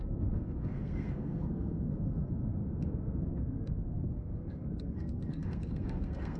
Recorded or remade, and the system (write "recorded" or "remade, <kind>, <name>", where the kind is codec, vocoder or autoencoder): remade, codec, SNAC